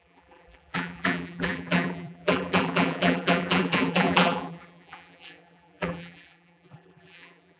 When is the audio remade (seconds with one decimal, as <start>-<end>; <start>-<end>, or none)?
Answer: 0.0-7.6